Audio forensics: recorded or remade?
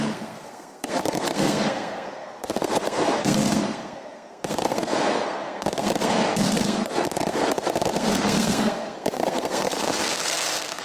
remade